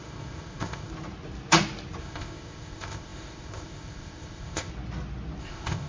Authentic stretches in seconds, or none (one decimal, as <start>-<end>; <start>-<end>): 0.9-2.0; 4.7-5.4